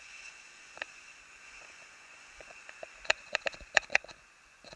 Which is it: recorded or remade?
remade